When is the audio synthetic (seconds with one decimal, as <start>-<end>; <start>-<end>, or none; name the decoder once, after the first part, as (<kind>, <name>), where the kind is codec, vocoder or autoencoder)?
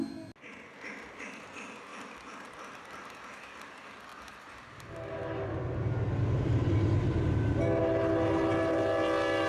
none